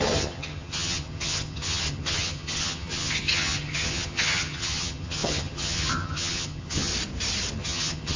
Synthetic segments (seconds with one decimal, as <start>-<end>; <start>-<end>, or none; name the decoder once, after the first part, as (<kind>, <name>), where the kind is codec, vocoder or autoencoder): 0.0-6.9 (vocoder, HiFi-GAN); 7.5-8.2